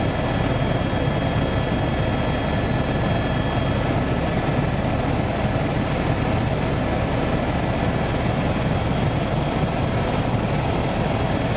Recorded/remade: recorded